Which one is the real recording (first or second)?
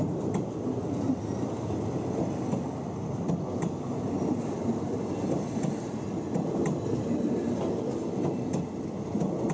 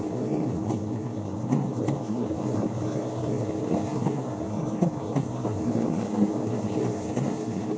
first